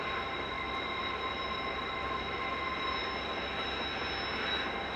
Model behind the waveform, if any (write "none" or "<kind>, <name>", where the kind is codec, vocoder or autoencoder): none